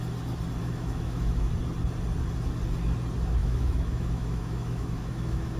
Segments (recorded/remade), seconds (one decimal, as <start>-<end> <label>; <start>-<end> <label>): 0.0-0.6 recorded; 0.6-1.5 remade; 1.5-3.4 recorded; 3.4-5.6 remade